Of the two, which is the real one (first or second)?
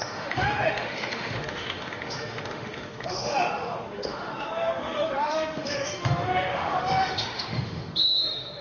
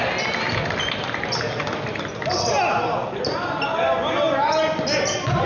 second